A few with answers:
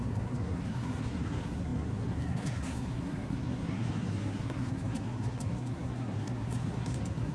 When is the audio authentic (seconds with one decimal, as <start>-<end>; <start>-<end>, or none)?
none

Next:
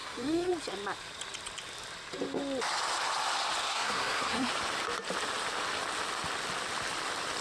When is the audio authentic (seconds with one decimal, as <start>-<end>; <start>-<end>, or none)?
0.5-3.6; 4.5-7.4

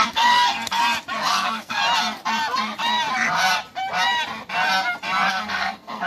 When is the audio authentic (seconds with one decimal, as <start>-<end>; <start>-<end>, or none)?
0.8-1.3; 1.8-5.3